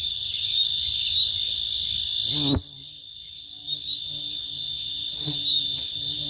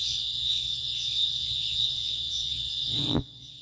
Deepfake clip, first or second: second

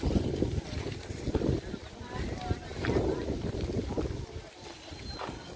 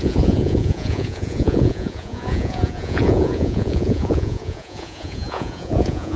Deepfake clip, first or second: second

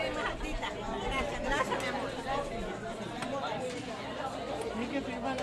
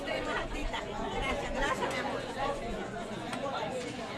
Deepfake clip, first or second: second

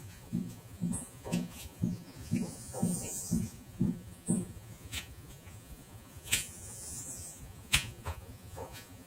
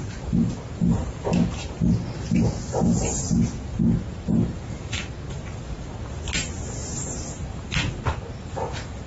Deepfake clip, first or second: first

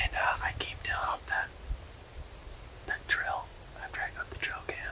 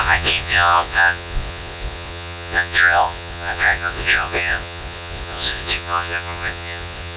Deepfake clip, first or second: second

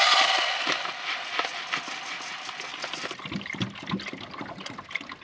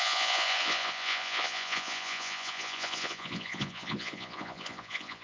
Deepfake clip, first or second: second